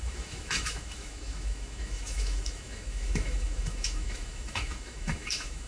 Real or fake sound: fake